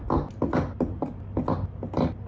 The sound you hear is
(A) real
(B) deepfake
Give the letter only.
A